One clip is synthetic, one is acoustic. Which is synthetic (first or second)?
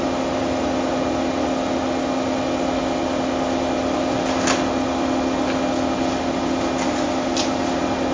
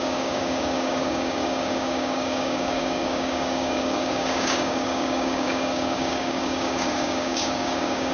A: second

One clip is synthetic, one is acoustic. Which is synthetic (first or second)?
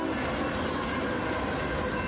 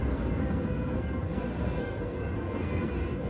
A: second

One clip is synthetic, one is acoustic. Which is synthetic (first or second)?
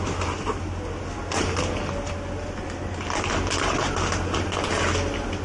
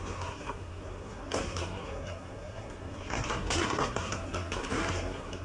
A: second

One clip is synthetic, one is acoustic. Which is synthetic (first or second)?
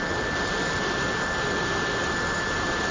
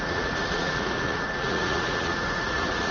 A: second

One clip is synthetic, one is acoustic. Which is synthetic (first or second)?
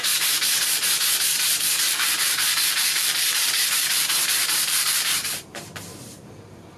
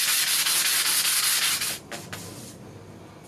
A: first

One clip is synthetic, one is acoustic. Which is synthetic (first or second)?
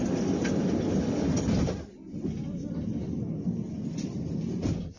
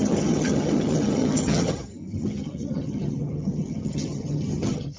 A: second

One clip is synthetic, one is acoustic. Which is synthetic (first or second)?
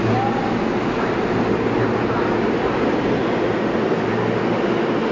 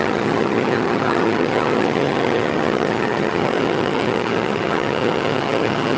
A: second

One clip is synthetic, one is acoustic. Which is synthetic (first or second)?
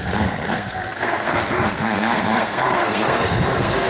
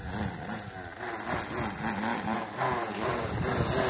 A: first